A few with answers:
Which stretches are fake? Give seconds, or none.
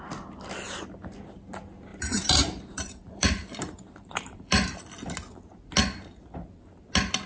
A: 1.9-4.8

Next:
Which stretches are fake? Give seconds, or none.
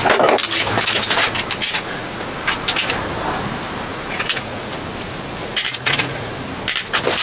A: 1.6-2.3; 3.9-4.7; 5.4-6.3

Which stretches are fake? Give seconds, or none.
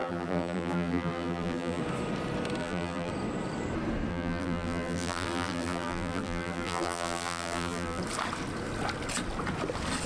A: 0.0-1.8; 2.6-3.1; 4.1-8.0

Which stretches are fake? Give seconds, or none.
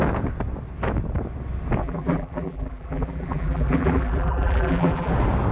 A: 1.8-5.1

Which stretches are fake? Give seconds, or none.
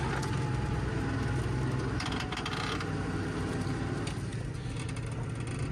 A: none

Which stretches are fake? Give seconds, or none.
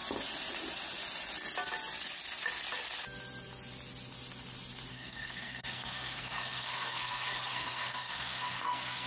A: 4.9-9.1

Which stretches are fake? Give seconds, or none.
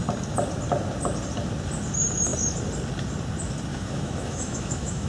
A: 3.7-5.1